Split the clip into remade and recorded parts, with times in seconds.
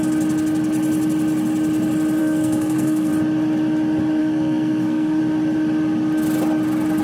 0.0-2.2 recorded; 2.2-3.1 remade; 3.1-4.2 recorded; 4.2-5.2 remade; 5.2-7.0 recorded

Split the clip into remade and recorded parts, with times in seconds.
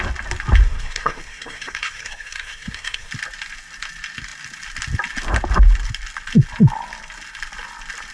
0.0-0.6 recorded; 0.6-3.1 remade; 3.1-8.1 recorded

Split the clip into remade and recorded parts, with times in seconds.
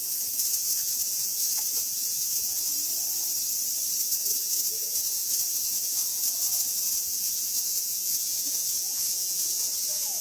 0.0-2.7 remade; 2.7-4.0 recorded; 4.0-10.2 remade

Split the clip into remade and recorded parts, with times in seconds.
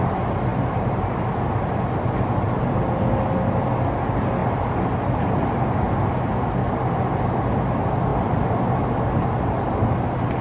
0.0-0.5 recorded; 0.5-1.6 remade; 1.6-4.4 recorded; 4.4-5.4 remade; 5.4-10.4 recorded